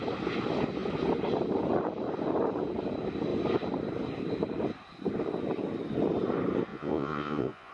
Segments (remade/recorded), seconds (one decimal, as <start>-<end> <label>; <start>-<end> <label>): 0.0-6.7 recorded; 6.7-7.7 remade

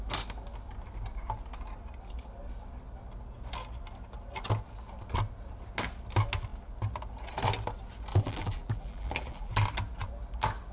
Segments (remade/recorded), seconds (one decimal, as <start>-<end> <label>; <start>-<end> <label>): 0.0-8.1 recorded; 8.1-9.5 remade; 9.5-10.7 recorded

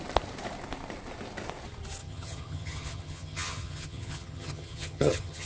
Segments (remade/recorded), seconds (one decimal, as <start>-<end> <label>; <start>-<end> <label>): 0.0-2.0 recorded; 2.0-5.5 remade

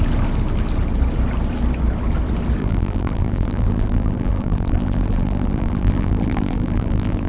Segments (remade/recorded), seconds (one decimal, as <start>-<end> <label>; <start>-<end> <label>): 0.0-2.6 recorded; 2.6-7.3 remade

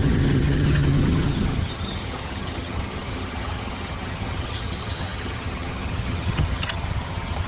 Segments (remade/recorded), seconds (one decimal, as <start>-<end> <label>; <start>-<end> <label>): 0.0-7.5 remade